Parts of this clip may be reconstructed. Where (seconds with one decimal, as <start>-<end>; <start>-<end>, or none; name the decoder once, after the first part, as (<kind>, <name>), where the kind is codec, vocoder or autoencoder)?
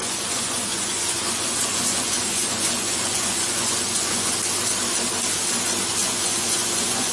0.0-4.3 (vocoder, Vocos); 5.9-7.1